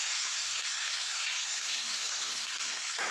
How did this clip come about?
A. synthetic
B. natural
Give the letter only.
A